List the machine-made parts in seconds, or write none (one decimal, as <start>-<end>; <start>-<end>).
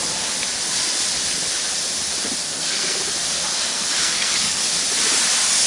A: 2.4-3.0; 3.5-4.6